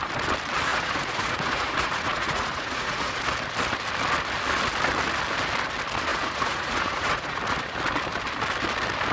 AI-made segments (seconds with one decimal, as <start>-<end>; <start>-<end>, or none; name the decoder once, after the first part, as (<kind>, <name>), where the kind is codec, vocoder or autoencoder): 0.7-3.2 (vocoder, Vocos); 6.1-7.4